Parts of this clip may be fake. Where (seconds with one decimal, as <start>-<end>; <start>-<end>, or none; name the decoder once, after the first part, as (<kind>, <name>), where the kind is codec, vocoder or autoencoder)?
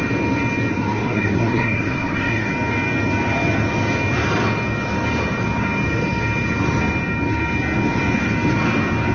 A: 0.7-2.5 (codec, SNAC)